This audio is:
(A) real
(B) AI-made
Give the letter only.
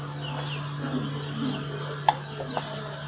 A